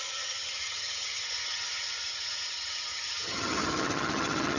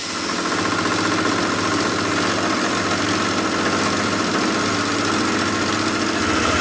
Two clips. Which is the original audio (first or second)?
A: second